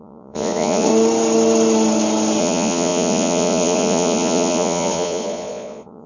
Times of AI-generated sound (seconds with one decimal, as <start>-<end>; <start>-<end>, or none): 0.0-0.9; 2.4-6.1